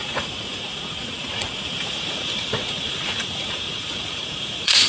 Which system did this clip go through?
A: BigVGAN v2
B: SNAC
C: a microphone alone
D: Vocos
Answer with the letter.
D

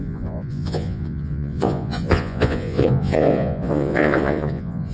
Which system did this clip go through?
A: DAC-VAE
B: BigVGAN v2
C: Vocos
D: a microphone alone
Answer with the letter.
C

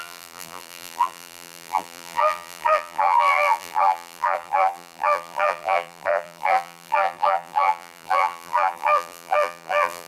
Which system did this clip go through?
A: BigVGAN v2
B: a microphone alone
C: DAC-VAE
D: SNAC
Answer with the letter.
A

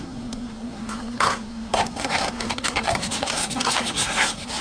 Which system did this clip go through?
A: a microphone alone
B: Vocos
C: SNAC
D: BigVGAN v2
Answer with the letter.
C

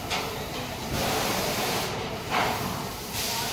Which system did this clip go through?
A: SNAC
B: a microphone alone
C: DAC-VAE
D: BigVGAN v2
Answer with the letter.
B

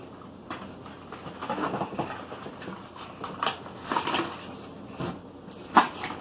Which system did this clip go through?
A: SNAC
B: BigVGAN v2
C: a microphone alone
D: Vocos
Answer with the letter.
C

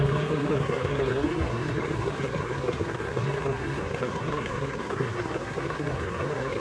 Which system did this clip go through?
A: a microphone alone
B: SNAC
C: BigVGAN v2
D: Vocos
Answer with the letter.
B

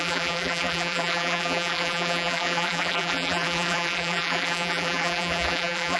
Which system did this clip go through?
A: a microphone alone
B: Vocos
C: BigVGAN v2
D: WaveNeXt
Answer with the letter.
C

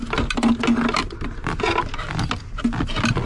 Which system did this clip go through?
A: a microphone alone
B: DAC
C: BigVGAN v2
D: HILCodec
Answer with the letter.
A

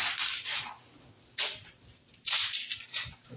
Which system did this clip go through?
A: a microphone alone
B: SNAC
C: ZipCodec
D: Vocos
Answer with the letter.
A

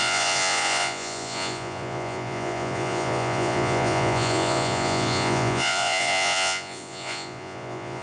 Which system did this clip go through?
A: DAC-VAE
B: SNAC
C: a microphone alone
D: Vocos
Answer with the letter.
D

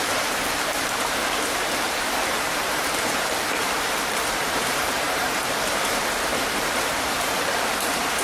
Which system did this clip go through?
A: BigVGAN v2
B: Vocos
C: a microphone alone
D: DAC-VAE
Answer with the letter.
A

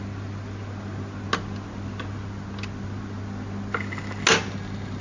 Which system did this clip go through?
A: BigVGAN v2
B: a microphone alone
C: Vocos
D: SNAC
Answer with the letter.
B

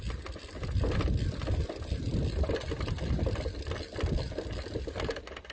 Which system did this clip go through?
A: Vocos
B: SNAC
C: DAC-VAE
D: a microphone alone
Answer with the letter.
D